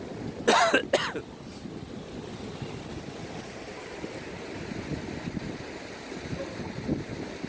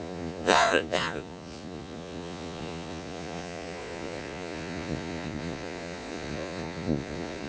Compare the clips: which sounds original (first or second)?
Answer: first